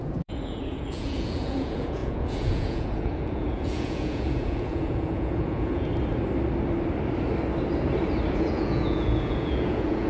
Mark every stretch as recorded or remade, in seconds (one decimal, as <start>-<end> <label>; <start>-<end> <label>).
0.0-5.9 remade; 5.9-8.3 recorded; 8.3-10.1 remade